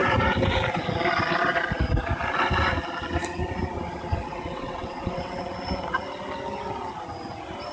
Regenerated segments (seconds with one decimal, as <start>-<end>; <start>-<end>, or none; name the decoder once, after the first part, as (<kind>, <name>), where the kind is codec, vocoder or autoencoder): 4.1-5.4 (vocoder, WaveNeXt)